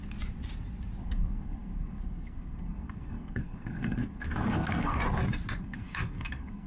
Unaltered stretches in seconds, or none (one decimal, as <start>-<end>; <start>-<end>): 0.0-1.0; 5.0-5.6